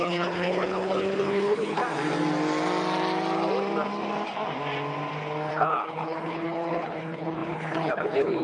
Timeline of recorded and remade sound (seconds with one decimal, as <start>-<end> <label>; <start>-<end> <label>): 0.0-1.8 remade; 1.8-5.5 recorded; 5.5-8.4 remade